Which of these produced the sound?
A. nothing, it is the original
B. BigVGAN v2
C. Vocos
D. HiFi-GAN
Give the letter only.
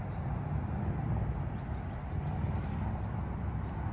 A